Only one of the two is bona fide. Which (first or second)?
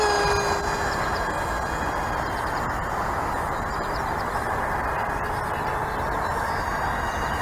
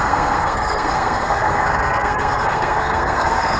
first